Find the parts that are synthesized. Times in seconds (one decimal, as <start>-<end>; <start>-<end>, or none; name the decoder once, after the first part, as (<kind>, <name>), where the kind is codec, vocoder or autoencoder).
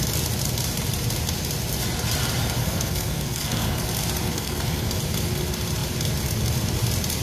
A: 2.6-3.8 (codec, SNAC); 4.2-4.9